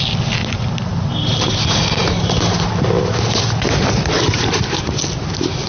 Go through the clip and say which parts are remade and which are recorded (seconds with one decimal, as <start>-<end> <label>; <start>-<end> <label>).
0.0-5.7 recorded